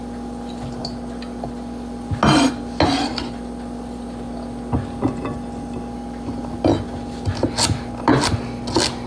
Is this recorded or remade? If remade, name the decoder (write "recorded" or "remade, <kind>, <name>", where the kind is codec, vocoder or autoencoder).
recorded